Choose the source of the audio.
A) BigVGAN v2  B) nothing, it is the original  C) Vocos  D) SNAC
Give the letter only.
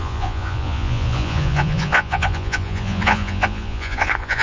C